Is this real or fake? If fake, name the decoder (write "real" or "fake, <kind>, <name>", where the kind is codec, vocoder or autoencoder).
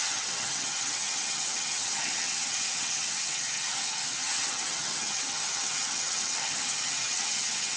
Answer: fake, vocoder, HiFi-GAN